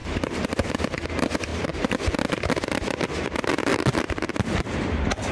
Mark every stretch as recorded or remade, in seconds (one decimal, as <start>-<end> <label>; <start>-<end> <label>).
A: 0.0-0.7 remade; 0.7-1.5 recorded; 1.5-2.3 remade; 2.3-3.7 recorded; 3.7-4.3 remade; 4.3-5.3 recorded